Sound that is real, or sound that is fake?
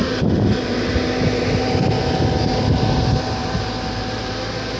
real